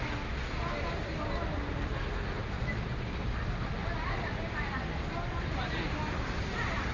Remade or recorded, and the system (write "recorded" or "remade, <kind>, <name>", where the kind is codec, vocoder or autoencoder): recorded